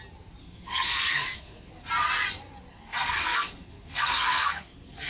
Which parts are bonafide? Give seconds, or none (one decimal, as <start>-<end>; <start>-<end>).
0.0-0.4; 1.7-2.7